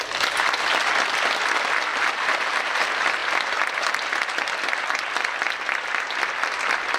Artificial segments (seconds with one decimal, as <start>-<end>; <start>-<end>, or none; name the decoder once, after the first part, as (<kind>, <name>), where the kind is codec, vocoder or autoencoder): 1.9-2.8 (vocoder, BigVGAN v2)

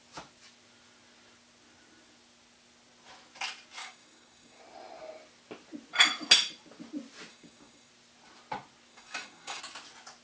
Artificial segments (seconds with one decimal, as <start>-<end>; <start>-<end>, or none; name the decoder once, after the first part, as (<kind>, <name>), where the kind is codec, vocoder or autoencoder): 3.8-4.6 (codec, DAC); 7.3-7.9; 8.9-9.6

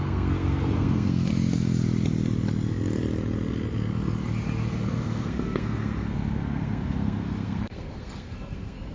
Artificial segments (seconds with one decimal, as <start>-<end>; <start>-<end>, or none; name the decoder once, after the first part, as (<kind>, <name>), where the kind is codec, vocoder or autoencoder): 0.0-1.3 (codec, SNAC); 5.0-8.9

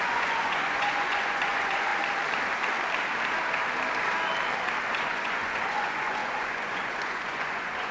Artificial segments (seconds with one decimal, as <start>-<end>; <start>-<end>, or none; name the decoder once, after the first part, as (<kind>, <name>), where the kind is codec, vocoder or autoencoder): 0.0-1.9 (vocoder, Vocos); 4.9-7.9

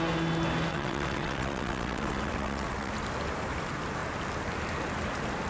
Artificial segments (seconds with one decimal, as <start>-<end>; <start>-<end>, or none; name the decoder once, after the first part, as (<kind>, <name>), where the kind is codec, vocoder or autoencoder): 0.7-2.9 (vocoder, WaveNeXt)

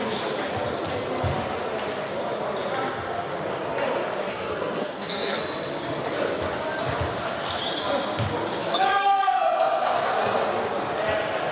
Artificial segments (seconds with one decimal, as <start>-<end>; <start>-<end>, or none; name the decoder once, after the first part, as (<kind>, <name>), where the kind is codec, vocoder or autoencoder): 4.3-5.4 (codec, SNAC); 8.6-10.1

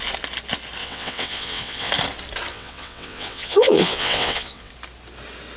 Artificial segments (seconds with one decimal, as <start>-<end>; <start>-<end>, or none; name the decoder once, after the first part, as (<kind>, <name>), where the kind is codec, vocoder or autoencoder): 0.8-1.9 (vocoder, WaveNeXt); 2.5-4.7

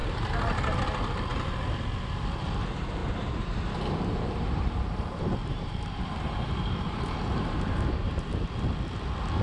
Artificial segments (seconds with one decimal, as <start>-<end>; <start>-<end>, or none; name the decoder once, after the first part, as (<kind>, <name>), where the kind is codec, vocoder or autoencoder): 3.0-8.2 (vocoder, BigVGAN v2)